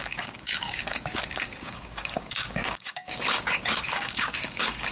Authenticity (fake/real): fake